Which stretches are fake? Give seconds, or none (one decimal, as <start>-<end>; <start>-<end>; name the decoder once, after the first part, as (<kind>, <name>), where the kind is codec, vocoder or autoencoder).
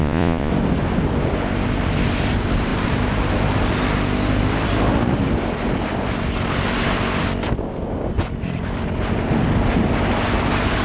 0.0-0.5 (vocoder, Vocos)